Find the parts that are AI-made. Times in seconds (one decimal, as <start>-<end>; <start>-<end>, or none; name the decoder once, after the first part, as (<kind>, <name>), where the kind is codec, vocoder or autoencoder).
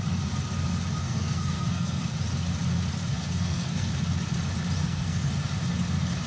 1.0-2.0 (codec, SNAC); 3.1-3.9; 4.8-5.3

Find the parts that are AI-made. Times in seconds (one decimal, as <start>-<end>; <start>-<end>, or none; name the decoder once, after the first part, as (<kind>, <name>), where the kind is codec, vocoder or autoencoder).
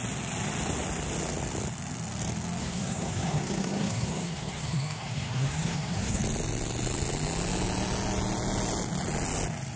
2.6-6.2 (codec, SNAC)